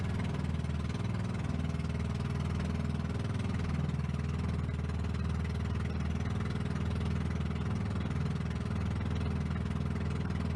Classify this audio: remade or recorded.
recorded